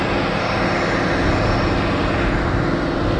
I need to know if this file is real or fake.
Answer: real